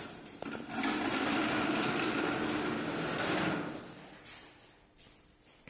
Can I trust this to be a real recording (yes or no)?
yes